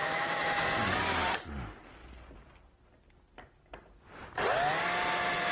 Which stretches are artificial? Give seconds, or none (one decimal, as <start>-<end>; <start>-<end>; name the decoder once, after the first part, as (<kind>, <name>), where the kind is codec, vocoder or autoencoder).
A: 0.0-0.6 (autoencoder, DAC-VAE)